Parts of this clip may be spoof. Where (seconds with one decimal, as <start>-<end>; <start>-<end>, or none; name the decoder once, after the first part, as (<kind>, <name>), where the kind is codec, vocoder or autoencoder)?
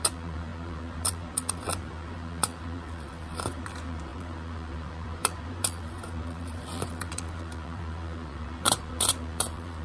0.0-9.8 (vocoder, Vocos)